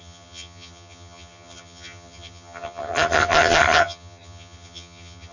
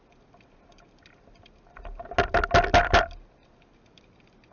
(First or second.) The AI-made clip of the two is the first